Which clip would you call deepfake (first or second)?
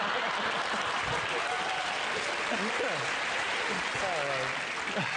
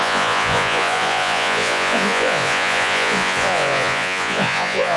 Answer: second